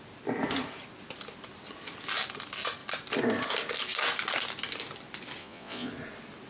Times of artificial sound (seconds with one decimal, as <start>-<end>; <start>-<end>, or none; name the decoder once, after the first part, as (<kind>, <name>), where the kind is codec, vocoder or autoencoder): 5.4-5.9 (vocoder, Vocos)